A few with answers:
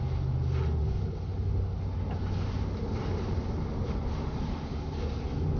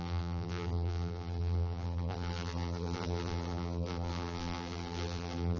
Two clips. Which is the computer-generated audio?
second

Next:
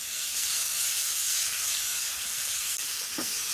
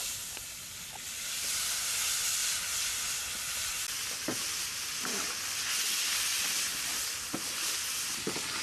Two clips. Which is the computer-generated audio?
first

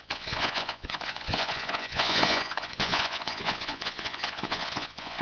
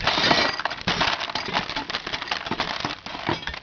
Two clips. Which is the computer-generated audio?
first